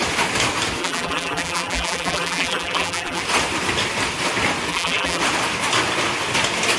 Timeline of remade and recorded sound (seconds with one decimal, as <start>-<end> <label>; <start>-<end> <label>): 0.0-0.8 recorded; 0.8-3.2 remade; 3.2-4.7 recorded; 4.7-5.2 remade; 5.2-6.8 recorded